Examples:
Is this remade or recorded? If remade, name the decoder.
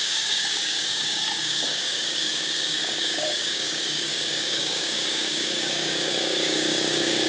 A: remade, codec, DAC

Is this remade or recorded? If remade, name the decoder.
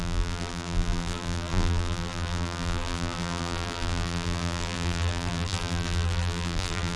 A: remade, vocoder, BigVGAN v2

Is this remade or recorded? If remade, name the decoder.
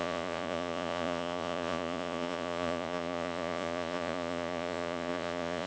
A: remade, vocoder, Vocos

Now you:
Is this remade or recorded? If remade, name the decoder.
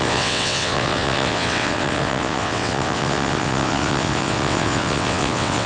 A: remade, vocoder, WaveNeXt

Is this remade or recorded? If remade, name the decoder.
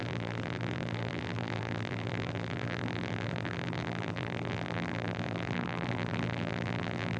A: remade, vocoder, BigVGAN v2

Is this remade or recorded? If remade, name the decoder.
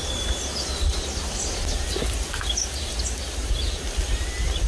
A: recorded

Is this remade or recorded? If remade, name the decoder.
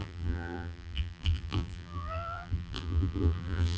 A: remade, vocoder, BigVGAN v2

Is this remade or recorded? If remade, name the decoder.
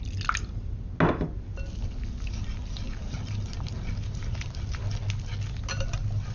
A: recorded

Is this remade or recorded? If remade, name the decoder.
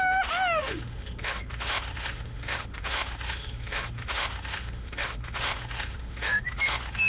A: remade, autoencoder, DAC-VAE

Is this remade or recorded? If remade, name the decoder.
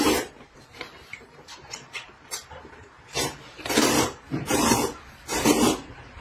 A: remade, vocoder, BigVGAN v2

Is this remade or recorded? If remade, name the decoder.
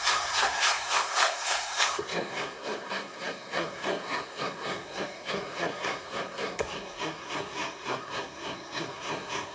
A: remade, codec, SNAC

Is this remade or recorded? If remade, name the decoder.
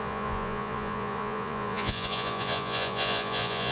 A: remade, vocoder, Vocos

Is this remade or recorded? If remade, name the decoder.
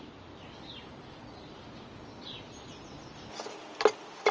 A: recorded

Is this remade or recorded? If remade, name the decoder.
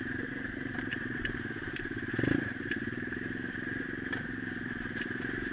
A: remade, vocoder, BigVGAN v2